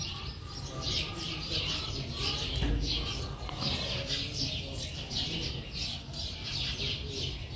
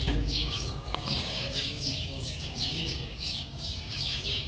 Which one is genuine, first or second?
first